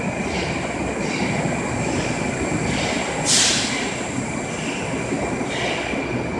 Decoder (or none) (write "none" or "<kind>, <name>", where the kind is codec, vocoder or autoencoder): none